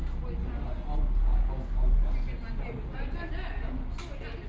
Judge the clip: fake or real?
real